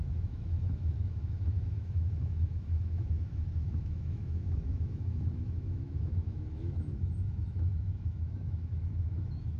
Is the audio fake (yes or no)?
yes